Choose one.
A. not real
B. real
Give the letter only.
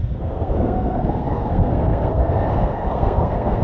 A